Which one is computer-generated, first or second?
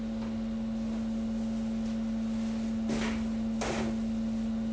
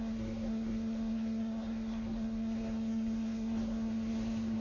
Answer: second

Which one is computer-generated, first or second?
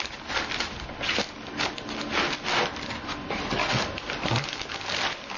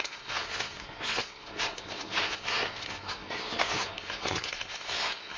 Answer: second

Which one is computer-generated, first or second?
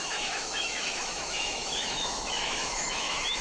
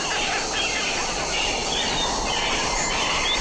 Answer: first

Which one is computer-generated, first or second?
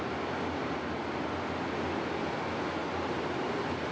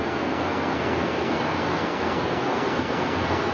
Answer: second